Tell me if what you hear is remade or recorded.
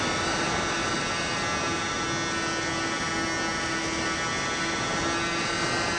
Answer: recorded